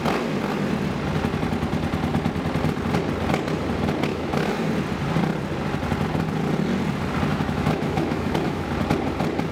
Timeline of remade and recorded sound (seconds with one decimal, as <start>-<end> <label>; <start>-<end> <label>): 0.0-4.1 recorded; 4.1-4.7 remade; 4.7-7.3 recorded; 7.3-8.7 remade; 8.7-9.5 recorded